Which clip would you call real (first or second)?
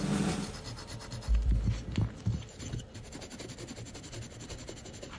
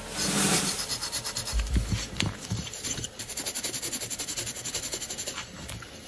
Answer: first